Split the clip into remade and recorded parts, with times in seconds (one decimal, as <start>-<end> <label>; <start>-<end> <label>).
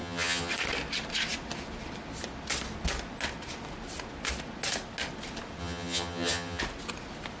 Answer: 0.0-0.5 remade; 0.5-5.6 recorded; 5.6-6.6 remade; 6.6-7.4 recorded